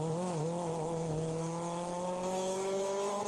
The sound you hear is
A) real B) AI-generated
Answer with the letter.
B